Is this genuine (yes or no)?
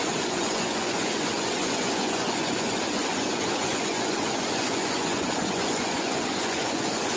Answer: no